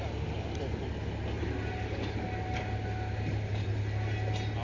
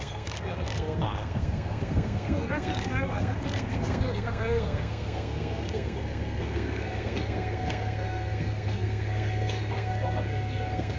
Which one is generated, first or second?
second